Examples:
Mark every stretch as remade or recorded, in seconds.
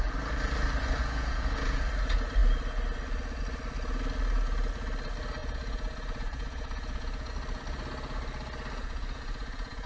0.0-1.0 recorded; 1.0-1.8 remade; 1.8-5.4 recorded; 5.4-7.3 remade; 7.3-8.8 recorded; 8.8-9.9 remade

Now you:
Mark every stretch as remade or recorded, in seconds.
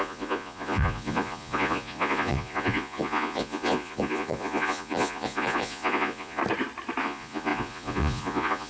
0.0-6.4 remade; 6.4-7.0 recorded; 7.0-8.7 remade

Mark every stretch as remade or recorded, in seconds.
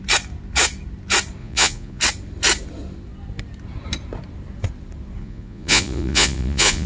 0.0-1.4 recorded; 1.4-2.0 remade; 2.0-5.2 recorded; 5.2-6.9 remade